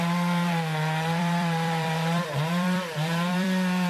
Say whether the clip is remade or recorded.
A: remade